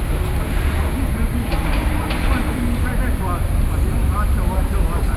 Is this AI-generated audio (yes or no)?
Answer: no